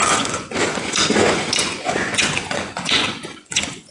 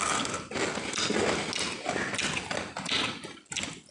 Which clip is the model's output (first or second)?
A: first